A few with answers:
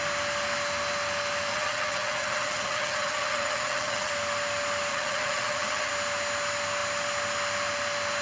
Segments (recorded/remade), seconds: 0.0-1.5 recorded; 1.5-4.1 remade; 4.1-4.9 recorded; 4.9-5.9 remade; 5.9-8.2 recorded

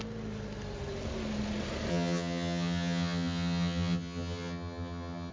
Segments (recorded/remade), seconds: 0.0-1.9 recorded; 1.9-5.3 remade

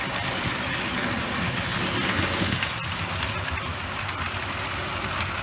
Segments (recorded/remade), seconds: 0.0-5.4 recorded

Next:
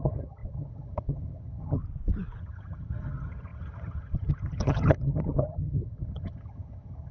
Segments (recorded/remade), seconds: 0.0-1.8 remade; 1.8-2.4 recorded; 2.4-7.1 remade

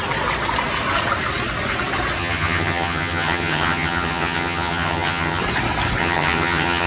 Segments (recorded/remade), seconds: 0.0-2.2 recorded; 2.2-5.4 remade; 5.4-6.0 recorded; 6.0-6.9 remade

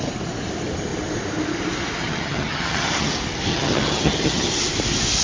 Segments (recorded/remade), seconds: 0.0-2.0 recorded; 2.0-3.1 remade; 3.1-3.5 recorded; 3.5-4.5 remade; 4.5-5.2 recorded

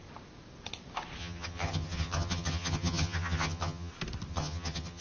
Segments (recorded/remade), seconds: 0.0-1.2 recorded; 1.2-3.9 remade; 3.9-4.3 recorded; 4.3-5.0 remade